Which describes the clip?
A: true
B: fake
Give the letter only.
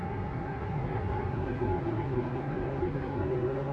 B